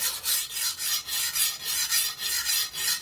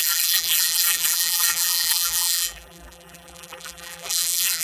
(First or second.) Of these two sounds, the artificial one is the second